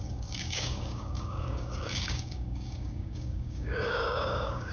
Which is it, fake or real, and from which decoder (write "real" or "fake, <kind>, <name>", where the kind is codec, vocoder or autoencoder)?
fake, codec, DAC